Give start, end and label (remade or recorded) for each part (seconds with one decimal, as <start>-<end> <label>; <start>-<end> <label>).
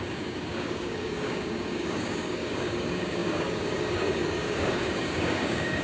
0.0-5.8 remade